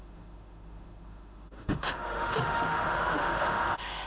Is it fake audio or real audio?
fake